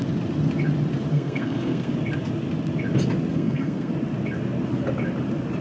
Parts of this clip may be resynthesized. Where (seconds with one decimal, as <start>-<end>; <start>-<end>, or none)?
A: 1.1-1.9; 3.3-3.9